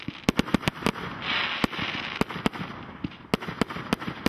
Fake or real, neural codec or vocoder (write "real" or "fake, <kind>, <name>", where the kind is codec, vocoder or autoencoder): real